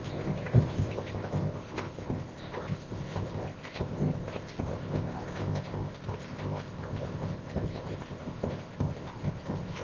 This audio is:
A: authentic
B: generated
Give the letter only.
B